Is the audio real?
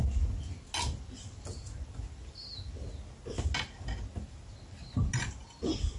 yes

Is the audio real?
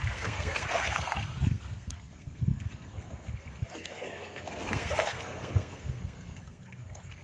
no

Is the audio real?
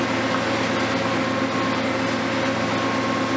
yes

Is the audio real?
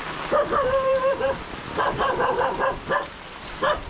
no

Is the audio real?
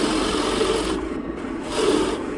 yes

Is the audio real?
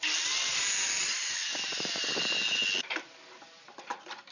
yes